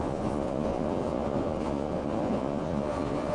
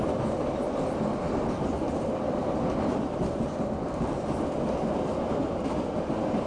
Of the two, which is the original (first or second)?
second